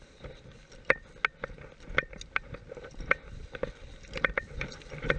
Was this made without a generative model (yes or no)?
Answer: yes